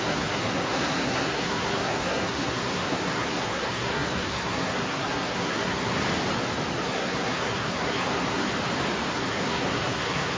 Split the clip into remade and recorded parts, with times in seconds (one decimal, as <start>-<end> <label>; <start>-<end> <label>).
0.0-6.0 remade; 6.0-6.7 recorded; 6.7-8.5 remade; 8.5-9.1 recorded; 9.1-10.4 remade